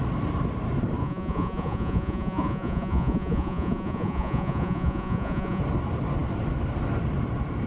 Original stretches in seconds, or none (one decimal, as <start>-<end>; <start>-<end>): 0.0-1.0; 5.6-7.7